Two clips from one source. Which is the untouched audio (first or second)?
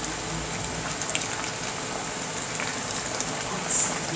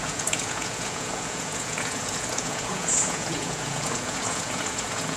first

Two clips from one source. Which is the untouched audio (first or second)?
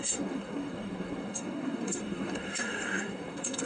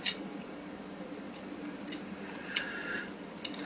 second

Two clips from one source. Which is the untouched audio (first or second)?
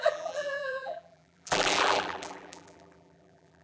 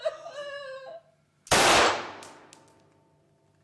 second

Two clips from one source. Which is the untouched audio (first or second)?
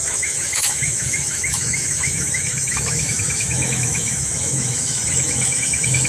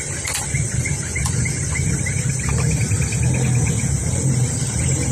second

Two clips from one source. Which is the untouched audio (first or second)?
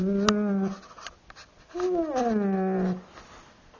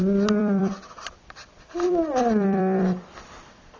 first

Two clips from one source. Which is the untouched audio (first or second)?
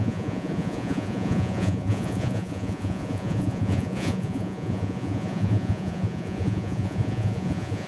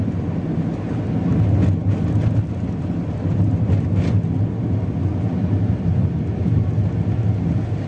second